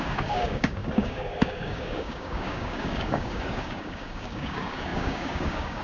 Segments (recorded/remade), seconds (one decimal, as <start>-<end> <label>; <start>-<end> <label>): 0.0-5.8 remade